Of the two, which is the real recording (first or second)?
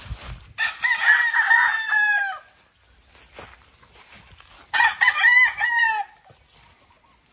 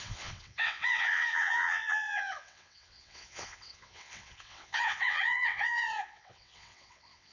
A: first